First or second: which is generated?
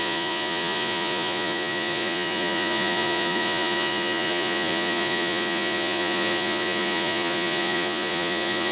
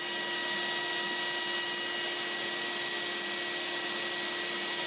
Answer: first